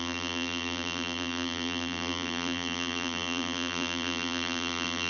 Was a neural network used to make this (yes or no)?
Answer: yes